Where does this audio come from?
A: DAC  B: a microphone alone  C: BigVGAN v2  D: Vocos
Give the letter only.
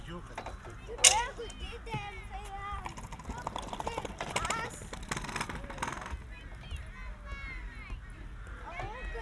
B